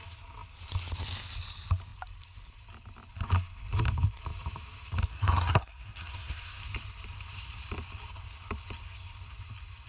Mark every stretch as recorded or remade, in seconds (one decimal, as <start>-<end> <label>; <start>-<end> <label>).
0.0-5.1 recorded; 5.1-6.6 remade; 6.6-9.9 recorded